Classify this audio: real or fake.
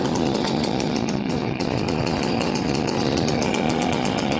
fake